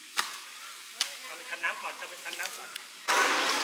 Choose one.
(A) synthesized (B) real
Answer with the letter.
A